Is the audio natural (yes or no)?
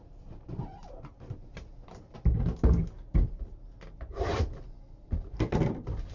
yes